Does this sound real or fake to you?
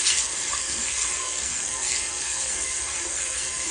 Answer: fake